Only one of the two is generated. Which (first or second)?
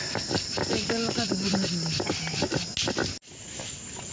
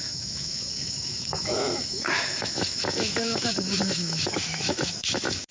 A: second